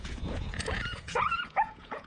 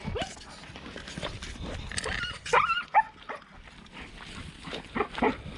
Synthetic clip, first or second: first